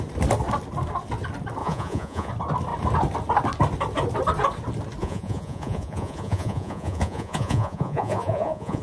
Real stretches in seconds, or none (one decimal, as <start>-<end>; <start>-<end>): 0.0-1.6; 2.3-5.0